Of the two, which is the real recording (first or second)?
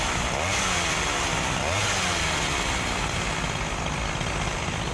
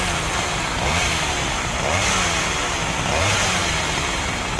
first